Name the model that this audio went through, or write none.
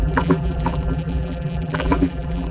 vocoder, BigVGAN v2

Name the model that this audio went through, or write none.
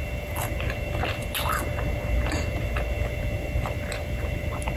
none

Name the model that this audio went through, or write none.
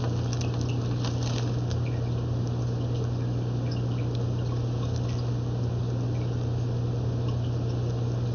none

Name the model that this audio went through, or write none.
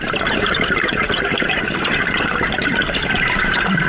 vocoder, BigVGAN v2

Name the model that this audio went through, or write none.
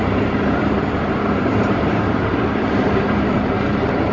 vocoder, BigVGAN v2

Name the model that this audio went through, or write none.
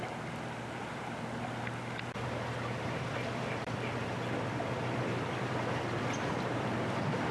vocoder, BigVGAN v2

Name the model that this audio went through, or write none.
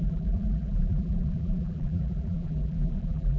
vocoder, BigVGAN v2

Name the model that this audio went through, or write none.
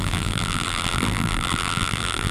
vocoder, BigVGAN v2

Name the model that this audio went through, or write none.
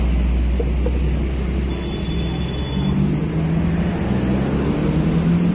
none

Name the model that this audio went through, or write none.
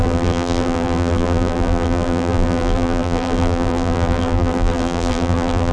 vocoder, BigVGAN v2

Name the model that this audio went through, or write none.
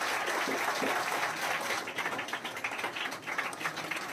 none